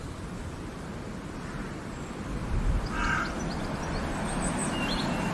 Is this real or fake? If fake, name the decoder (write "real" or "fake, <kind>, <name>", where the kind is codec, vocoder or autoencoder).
real